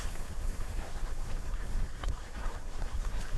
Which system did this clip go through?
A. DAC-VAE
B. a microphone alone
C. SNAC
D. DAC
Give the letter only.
C